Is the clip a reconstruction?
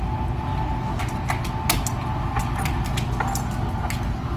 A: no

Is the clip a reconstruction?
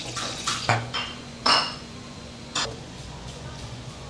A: yes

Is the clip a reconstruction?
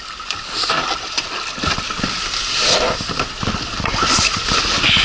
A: no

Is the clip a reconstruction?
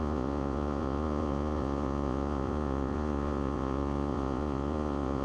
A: yes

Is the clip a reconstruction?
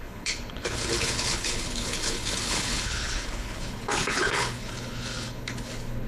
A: yes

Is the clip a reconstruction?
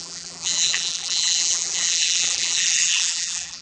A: yes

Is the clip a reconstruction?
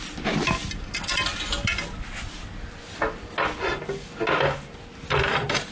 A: no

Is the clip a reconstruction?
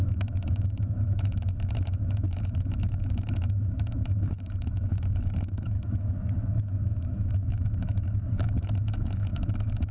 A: yes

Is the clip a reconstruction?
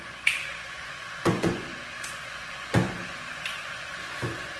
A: yes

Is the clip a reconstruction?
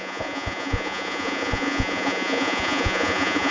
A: yes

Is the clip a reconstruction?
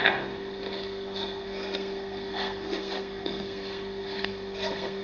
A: yes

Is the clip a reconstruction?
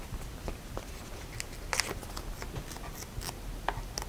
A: no